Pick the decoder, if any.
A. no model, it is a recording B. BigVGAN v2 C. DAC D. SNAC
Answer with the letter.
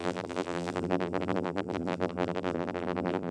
B